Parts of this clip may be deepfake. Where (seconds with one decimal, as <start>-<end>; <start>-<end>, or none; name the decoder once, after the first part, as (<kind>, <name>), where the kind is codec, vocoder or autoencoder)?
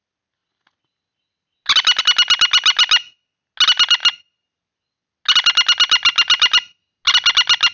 none